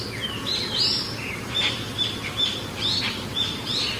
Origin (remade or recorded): remade